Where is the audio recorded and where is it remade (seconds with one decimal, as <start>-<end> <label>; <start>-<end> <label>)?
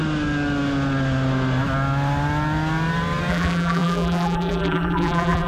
0.0-3.3 recorded; 3.3-5.5 remade